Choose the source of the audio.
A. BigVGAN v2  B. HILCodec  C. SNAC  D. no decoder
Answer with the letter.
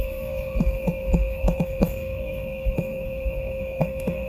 C